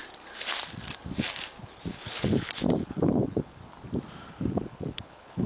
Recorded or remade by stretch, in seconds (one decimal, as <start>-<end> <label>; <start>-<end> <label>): 0.0-1.6 recorded; 1.6-3.6 remade; 3.6-4.3 recorded; 4.3-5.5 remade